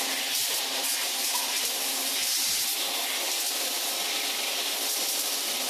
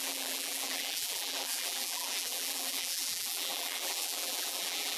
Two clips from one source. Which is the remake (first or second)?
second